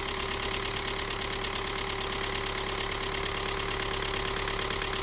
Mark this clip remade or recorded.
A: recorded